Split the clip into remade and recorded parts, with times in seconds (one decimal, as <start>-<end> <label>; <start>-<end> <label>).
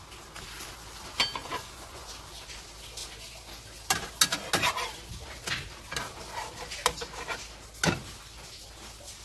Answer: 0.0-1.4 recorded; 1.4-2.1 remade; 2.1-9.2 recorded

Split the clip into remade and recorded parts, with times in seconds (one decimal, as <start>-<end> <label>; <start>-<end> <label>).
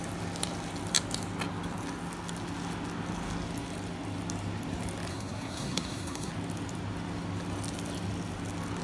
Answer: 0.0-5.1 recorded; 5.1-6.3 remade; 6.3-8.8 recorded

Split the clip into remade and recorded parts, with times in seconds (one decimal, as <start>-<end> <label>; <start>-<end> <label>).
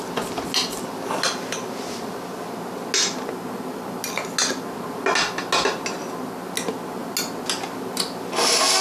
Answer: 0.0-8.8 recorded